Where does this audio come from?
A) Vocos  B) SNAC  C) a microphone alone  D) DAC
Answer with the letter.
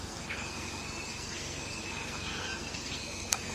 B